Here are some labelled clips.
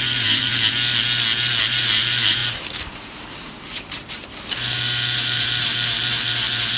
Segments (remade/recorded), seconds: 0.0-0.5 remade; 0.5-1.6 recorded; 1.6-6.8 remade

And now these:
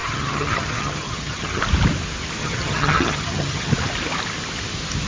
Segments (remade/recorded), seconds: 0.0-1.6 remade; 1.6-2.4 recorded; 2.4-3.7 remade; 3.7-5.1 recorded

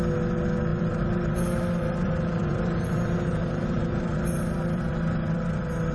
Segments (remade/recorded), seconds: 0.0-0.7 recorded; 0.7-4.2 remade; 4.2-5.9 recorded

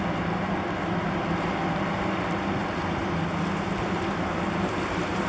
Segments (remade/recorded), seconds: 0.0-5.3 recorded

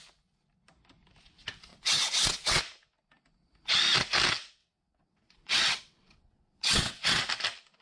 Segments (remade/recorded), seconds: 0.0-1.7 recorded; 1.7-2.6 remade; 2.6-4.6 recorded; 4.6-7.2 remade; 7.2-7.8 recorded

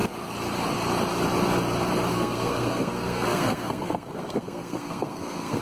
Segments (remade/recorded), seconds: 0.0-2.1 recorded; 2.1-5.6 remade

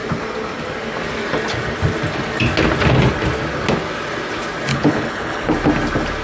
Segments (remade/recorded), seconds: 0.0-4.7 recorded; 4.7-5.5 remade; 5.5-6.2 recorded

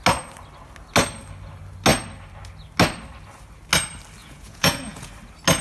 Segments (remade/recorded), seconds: 0.0-4.2 recorded; 4.2-5.1 remade; 5.1-5.6 recorded